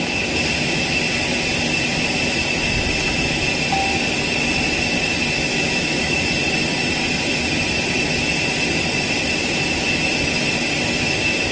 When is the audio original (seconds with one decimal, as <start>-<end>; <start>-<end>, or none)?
0.0-5.5; 6.2-11.5